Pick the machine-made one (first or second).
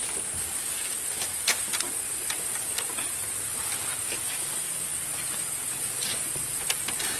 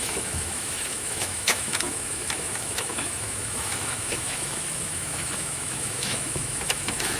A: second